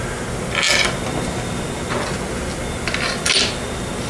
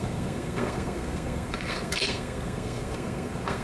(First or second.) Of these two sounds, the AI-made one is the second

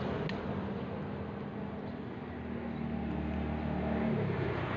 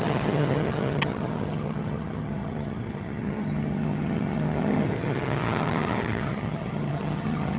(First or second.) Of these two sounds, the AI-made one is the second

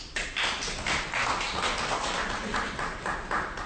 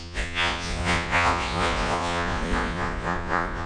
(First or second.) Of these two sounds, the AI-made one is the second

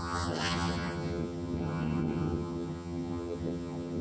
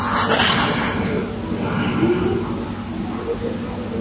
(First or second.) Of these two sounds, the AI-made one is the first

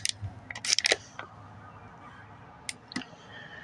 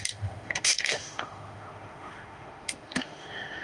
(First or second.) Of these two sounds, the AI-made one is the second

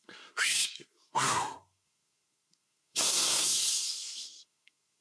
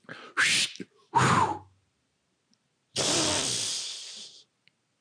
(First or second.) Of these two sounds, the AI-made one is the first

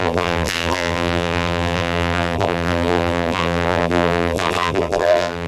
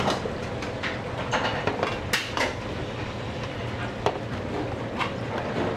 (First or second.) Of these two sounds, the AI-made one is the first